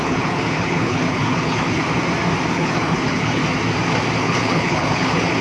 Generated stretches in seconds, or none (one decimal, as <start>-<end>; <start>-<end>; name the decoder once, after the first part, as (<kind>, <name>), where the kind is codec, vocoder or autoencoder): 0.0-1.8 (codec, HILCodec); 2.5-3.4; 4.2-5.4